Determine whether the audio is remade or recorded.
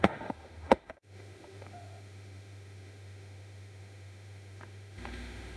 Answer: remade